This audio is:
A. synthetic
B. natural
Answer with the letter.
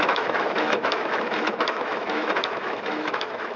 A